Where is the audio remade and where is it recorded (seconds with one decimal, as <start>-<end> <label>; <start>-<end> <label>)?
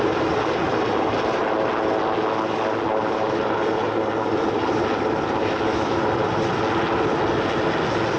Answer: 0.0-5.4 recorded; 5.4-6.0 remade; 6.0-8.2 recorded